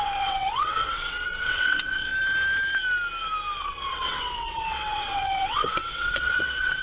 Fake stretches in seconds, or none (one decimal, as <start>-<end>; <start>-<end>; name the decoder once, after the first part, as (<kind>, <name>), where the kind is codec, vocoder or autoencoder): 0.0-2.1 (vocoder, WaveNeXt); 3.6-6.8

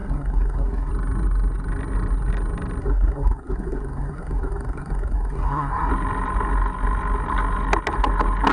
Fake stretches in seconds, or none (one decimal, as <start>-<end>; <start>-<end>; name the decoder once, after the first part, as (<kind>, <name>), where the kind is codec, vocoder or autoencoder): 0.0-0.9 (codec, SNAC); 2.8-5.9

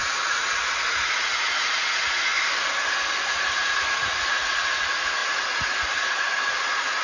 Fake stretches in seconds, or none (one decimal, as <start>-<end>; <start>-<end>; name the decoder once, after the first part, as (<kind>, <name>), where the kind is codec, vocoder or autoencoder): 0.0-2.3 (vocoder, Vocos); 3.3-7.0

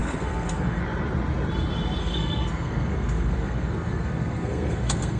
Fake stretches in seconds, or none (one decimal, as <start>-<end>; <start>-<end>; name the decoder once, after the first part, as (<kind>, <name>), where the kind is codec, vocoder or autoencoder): 0.0-0.8 (codec, SNAC); 2.0-5.2